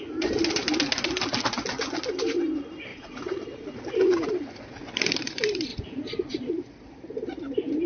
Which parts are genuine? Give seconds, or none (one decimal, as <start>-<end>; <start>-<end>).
0.0-2.9; 3.8-5.7; 6.5-7.9